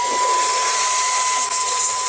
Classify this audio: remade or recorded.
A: recorded